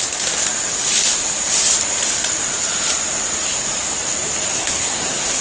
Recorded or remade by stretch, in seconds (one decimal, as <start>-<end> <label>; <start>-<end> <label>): 0.0-4.5 recorded; 4.5-5.4 remade